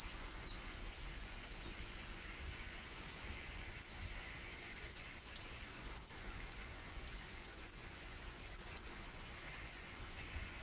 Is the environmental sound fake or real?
fake